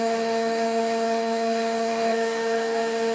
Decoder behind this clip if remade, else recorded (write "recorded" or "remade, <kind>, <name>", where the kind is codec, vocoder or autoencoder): remade, codec, DAC